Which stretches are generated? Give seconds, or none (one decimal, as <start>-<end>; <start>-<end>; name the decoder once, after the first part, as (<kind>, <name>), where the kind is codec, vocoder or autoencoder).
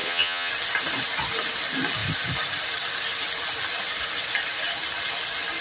0.0-0.5 (vocoder, HiFi-GAN)